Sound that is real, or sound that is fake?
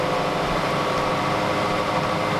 real